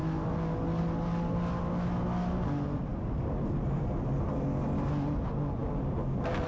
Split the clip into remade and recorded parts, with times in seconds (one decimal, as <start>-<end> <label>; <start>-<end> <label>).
0.0-6.5 recorded